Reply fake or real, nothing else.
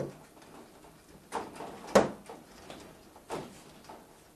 real